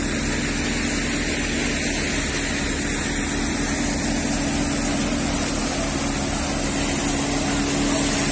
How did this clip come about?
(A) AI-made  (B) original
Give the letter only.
B